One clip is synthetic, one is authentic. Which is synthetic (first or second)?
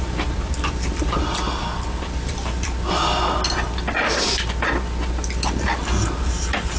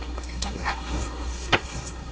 second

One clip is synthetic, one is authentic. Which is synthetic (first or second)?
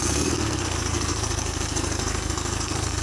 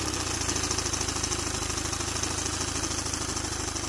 first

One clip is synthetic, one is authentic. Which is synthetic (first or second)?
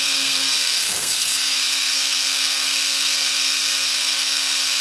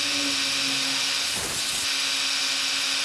first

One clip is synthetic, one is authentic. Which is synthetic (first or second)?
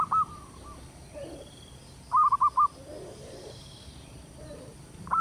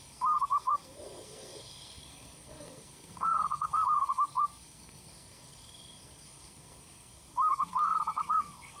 second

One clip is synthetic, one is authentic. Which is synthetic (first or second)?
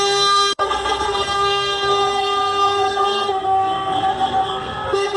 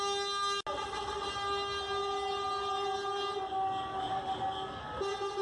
first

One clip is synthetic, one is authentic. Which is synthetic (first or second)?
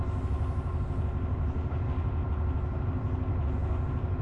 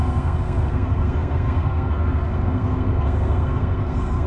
second